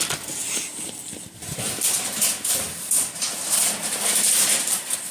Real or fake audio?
real